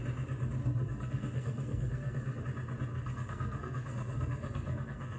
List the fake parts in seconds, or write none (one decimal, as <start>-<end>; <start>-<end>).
0.6-2.4; 2.9-5.2